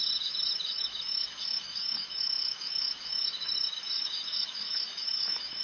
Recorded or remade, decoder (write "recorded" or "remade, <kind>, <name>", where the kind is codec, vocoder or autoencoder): remade, autoencoder, DAC-VAE